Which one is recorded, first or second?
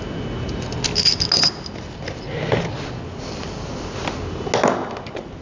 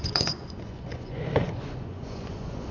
first